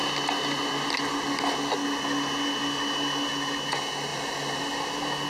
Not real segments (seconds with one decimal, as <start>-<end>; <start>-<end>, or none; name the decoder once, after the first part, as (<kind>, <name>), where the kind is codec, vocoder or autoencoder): none